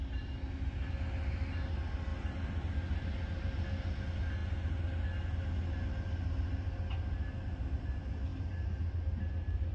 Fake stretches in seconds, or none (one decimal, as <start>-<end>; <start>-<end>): none